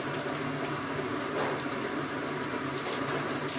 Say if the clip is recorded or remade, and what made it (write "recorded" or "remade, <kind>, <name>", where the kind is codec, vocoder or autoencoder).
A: remade, vocoder, BigVGAN v2